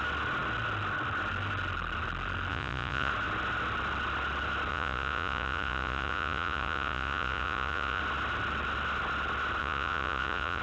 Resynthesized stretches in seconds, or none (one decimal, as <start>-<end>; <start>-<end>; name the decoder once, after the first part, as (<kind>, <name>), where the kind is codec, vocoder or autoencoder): 2.5-3.1 (vocoder, Vocos); 4.7-8.0; 9.6-10.6